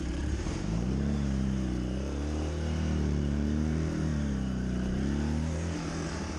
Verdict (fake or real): fake